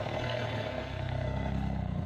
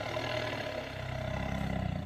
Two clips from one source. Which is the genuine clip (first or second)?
second